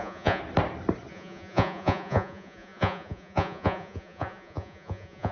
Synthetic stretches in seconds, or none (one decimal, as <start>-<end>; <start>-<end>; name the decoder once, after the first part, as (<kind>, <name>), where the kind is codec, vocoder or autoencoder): 0.0-0.4 (vocoder, Vocos); 1.1-5.3